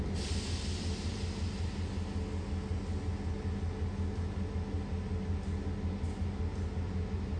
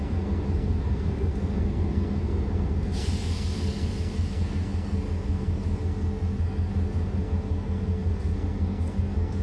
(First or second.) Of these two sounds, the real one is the first